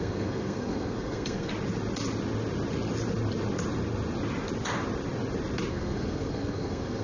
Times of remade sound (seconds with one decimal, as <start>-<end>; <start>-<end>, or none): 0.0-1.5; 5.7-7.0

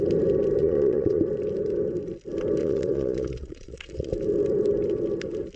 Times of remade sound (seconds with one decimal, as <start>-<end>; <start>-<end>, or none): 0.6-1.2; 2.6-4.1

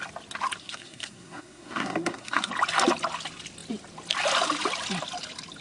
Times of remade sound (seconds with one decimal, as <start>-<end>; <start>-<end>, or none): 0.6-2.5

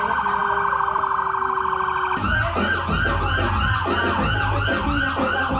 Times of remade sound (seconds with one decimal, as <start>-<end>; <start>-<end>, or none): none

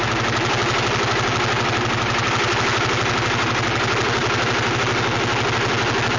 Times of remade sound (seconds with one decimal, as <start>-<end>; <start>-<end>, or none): none